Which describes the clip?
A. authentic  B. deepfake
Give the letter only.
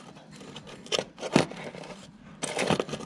A